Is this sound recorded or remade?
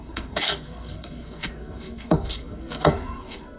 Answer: remade